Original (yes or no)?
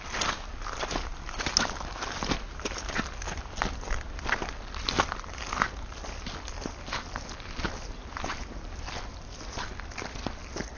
yes